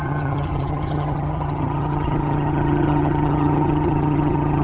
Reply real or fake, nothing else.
fake